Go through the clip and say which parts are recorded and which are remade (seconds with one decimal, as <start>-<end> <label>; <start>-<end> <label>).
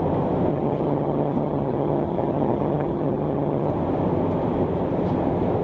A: 0.0-0.5 recorded; 0.5-3.7 remade; 3.7-5.6 recorded